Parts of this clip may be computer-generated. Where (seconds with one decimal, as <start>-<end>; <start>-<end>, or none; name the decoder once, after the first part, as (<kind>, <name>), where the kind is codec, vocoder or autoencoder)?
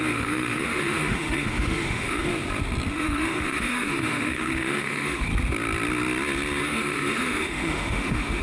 0.0-2.3 (autoencoder, DAC-VAE); 2.9-5.3; 6.6-8.4